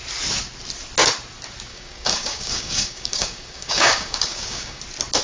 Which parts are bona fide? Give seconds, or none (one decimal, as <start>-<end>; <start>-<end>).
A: 0.0-1.7; 4.8-5.2